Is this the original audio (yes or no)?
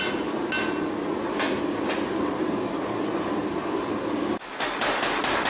yes